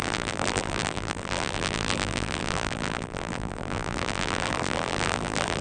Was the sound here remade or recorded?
remade